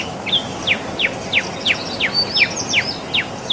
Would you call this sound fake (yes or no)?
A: no